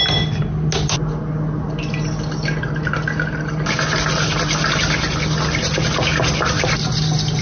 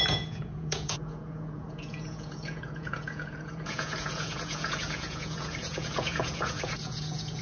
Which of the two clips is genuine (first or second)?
first